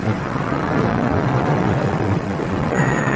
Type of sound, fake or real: fake